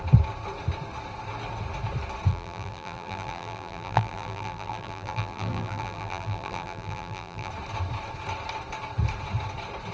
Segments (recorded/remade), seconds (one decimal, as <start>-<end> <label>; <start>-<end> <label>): 0.0-2.3 recorded; 2.3-7.5 remade; 7.5-9.9 recorded